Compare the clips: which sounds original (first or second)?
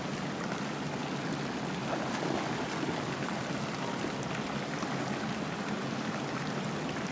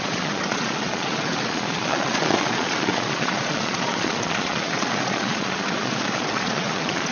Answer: first